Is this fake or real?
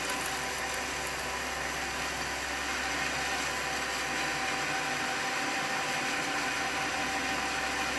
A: real